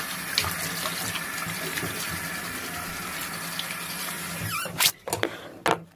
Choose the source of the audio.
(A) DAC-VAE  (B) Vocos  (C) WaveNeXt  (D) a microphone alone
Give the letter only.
D